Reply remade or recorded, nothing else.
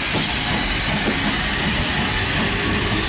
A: recorded